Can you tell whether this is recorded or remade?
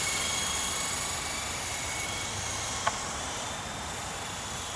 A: remade